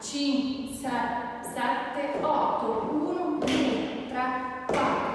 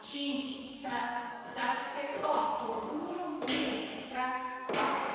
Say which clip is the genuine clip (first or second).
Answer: first